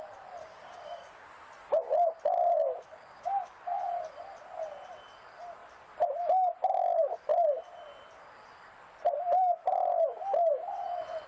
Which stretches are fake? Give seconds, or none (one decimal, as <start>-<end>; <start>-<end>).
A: 0.4-1.3; 2.9-3.8